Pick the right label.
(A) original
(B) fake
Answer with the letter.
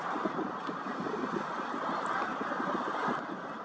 A